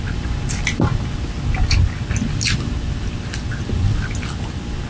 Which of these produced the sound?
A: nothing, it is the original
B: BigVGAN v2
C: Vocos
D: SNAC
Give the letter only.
A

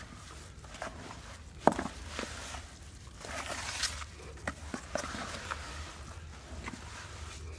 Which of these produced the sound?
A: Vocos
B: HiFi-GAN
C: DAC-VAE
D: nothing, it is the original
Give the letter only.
D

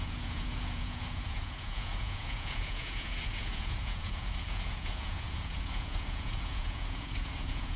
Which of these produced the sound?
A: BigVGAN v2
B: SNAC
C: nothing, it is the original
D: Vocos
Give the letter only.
D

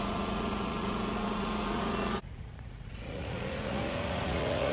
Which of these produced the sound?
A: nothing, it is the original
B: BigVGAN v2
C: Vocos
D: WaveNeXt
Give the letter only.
C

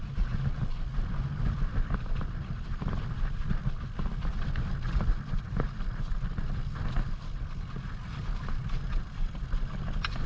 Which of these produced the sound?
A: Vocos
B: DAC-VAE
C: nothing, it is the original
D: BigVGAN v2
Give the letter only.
C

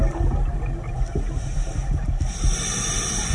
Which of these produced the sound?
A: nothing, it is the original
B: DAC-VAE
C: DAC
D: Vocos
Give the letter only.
A